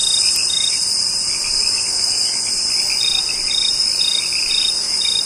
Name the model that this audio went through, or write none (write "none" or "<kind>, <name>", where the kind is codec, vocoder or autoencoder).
none